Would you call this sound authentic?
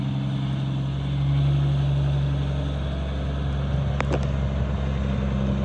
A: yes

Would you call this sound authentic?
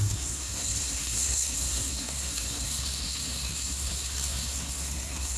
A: no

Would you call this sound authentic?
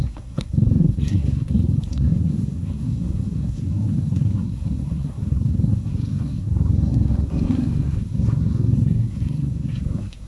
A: no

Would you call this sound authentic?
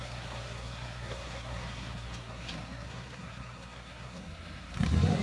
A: no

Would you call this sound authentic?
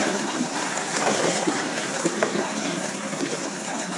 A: no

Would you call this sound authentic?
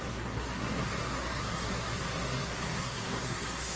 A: no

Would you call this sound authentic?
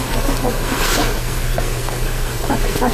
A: no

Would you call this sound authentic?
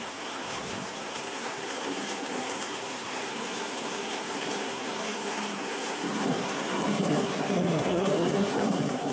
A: no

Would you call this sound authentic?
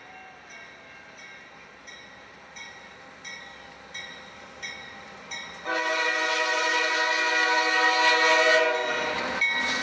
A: yes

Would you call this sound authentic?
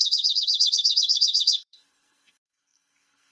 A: no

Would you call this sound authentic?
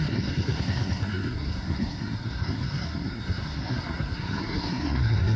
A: no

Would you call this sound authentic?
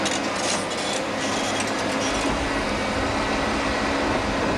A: yes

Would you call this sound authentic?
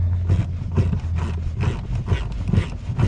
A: yes